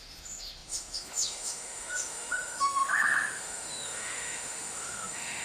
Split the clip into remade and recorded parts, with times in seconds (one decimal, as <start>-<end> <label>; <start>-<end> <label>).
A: 0.0-5.4 remade